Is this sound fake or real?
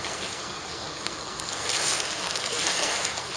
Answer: fake